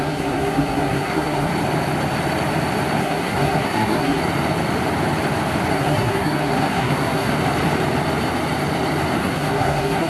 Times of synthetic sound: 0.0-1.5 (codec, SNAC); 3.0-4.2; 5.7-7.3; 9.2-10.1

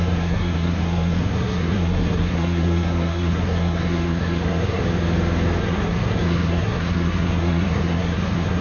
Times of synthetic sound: 0.0-4.8 (codec, SNAC); 5.6-8.6